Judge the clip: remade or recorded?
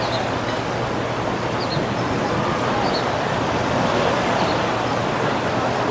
recorded